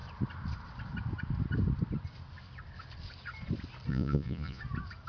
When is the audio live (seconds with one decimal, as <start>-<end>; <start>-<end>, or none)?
0.0-3.9; 4.6-5.1